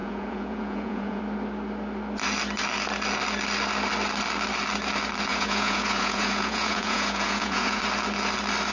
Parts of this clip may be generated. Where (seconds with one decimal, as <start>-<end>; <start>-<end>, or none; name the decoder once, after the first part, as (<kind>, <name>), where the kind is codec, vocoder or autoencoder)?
0.0-1.2 (vocoder, Vocos); 5.3-7.8